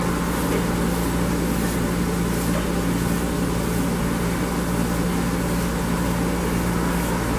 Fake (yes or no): no